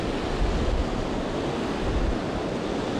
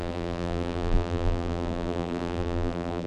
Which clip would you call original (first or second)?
first